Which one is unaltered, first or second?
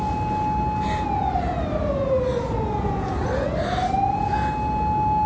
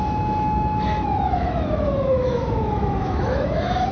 first